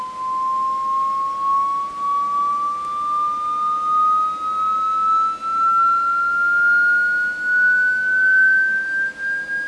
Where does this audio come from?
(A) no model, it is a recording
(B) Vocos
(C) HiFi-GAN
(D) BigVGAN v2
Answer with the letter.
A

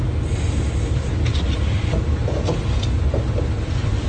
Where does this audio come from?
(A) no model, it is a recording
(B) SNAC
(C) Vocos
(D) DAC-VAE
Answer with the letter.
A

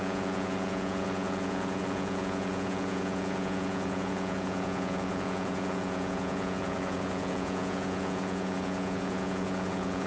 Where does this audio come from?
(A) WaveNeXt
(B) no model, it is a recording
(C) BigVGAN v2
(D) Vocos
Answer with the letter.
D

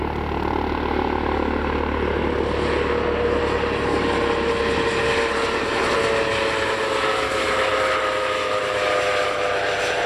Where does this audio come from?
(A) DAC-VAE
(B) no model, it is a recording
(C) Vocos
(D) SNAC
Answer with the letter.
B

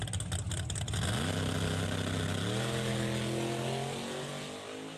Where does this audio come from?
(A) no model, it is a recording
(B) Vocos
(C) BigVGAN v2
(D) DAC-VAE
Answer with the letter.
A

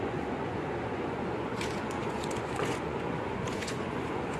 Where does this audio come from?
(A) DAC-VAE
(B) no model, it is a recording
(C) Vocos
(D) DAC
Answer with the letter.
C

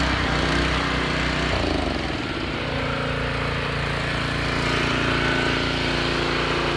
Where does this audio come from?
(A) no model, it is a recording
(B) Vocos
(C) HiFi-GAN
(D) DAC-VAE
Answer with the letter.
A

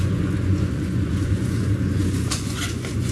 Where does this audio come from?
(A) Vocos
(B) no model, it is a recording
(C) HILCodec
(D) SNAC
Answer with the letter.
A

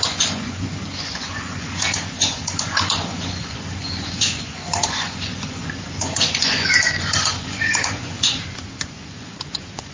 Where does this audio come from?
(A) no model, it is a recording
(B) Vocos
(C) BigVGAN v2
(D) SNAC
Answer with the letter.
B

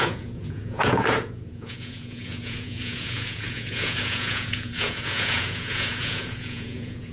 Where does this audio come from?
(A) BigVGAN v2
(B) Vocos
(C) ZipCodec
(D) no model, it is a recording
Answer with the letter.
B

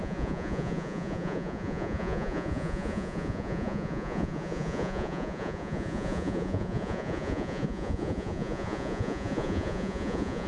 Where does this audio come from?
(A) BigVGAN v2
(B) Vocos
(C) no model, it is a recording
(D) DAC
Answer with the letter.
B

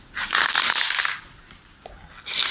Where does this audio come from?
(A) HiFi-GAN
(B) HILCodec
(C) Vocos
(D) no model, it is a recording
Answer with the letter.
D